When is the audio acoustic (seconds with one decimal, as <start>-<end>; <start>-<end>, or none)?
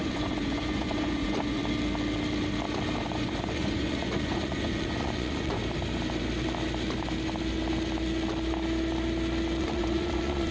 1.6-3.0; 5.6-9.6